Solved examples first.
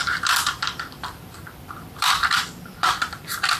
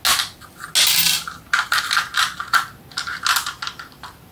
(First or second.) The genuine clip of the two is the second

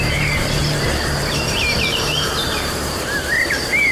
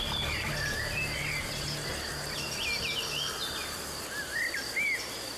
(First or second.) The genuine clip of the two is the second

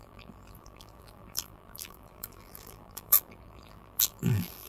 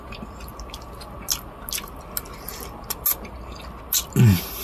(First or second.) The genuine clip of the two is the second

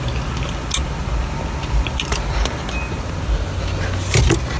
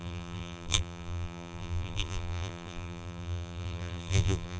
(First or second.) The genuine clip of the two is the first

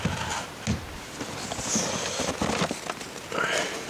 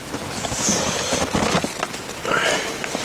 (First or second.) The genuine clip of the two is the first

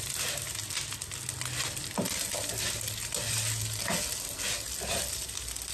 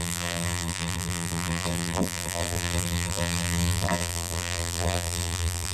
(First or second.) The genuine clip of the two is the first